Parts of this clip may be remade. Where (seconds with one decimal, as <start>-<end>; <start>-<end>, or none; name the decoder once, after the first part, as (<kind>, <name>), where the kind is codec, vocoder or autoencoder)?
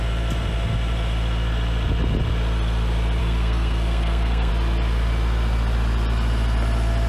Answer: 3.2-4.5 (codec, SNAC)